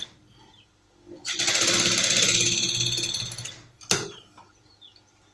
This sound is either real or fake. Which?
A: fake